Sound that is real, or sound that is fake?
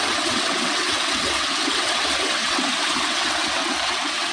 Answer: fake